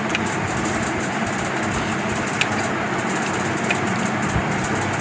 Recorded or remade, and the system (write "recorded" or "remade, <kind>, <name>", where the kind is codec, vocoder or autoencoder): recorded